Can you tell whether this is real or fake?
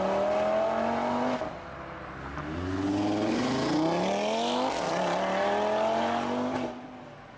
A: real